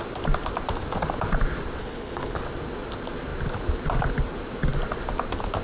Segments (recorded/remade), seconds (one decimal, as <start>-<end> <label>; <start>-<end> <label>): 0.0-1.8 recorded; 1.8-2.4 remade; 2.4-5.6 recorded

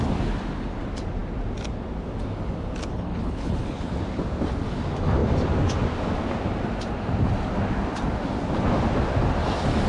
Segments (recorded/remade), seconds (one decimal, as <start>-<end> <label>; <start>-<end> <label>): 0.0-2.9 recorded; 2.9-3.9 remade; 3.9-9.9 recorded

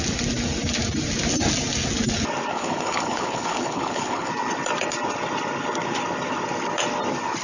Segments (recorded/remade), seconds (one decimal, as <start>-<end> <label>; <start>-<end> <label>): 0.0-2.5 recorded; 2.5-4.3 remade; 4.3-7.4 recorded